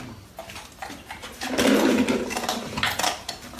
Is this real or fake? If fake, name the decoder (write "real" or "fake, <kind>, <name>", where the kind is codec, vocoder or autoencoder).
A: real